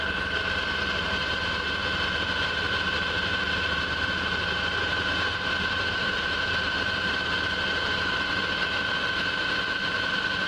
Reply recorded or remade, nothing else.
remade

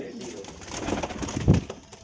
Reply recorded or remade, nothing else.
recorded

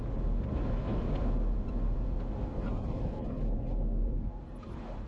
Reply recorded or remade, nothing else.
recorded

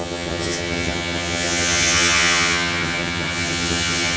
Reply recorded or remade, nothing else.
remade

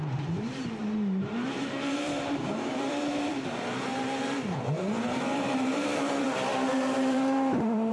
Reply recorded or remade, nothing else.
remade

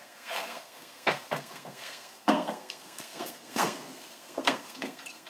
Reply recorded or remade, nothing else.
remade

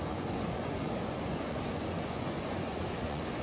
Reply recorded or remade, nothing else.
remade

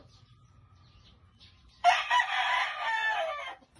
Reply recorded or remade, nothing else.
recorded